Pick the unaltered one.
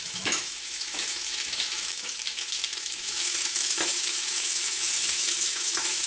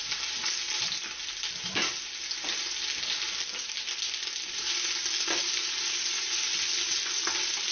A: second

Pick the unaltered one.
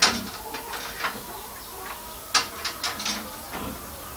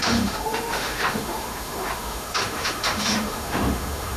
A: first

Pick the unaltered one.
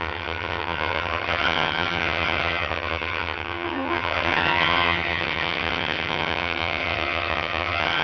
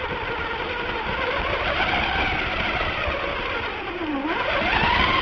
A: second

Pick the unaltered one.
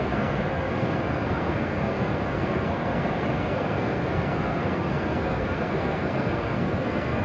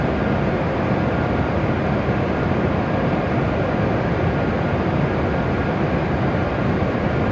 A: second